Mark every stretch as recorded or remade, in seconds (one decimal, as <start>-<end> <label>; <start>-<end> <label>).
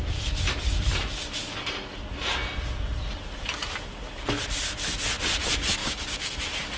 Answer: 0.0-5.8 recorded; 5.8-6.3 remade; 6.3-6.8 recorded